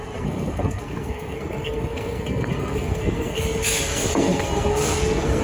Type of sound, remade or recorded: remade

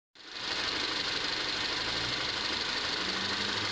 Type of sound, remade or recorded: recorded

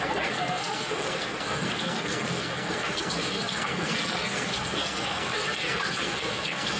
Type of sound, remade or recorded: remade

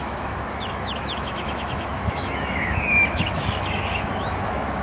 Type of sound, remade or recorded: remade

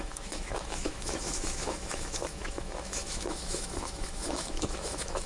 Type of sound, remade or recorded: remade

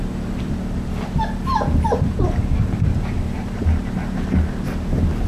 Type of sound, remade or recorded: recorded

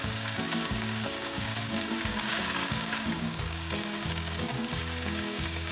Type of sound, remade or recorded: remade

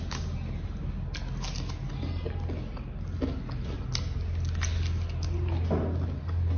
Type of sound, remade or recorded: recorded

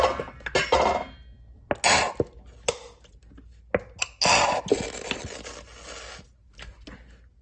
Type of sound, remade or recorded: recorded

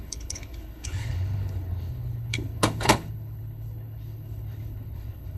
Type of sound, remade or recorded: remade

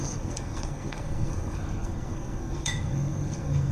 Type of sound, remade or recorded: remade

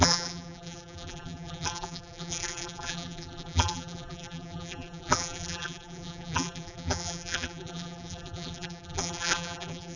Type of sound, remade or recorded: remade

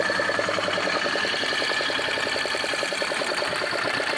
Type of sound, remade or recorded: remade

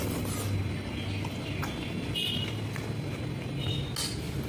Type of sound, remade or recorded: recorded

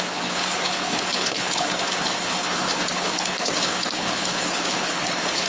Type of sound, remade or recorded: remade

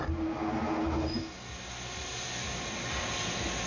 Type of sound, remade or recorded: recorded